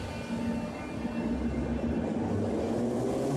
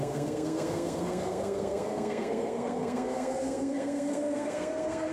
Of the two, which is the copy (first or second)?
second